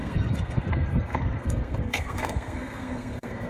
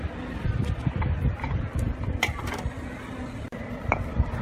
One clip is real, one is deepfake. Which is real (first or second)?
second